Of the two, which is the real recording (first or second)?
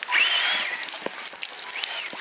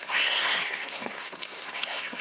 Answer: first